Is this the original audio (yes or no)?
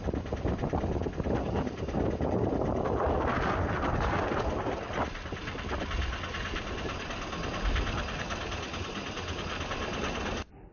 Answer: yes